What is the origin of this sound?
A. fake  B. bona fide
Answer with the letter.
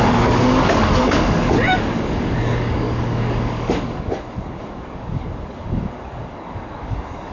A